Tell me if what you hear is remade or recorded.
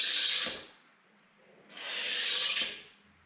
recorded